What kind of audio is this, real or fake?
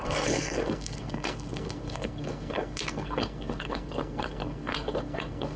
fake